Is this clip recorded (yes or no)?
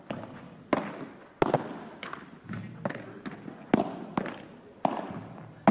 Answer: yes